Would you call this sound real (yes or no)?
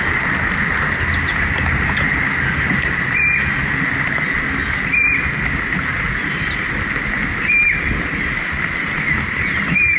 yes